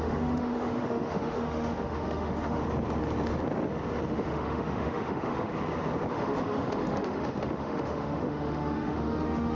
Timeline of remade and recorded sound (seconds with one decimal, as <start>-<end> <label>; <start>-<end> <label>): 0.0-2.6 remade; 2.6-4.1 recorded; 4.1-5.5 remade; 5.5-6.1 recorded; 6.1-9.5 remade